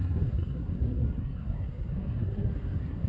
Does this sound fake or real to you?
fake